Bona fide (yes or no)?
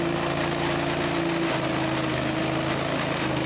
yes